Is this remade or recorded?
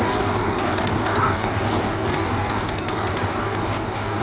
remade